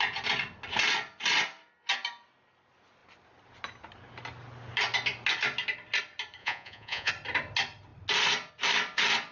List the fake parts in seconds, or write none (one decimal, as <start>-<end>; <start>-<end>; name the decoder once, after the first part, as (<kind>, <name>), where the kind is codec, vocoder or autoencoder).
6.4-7.1 (vocoder, Vocos)